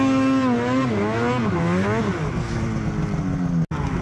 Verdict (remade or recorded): recorded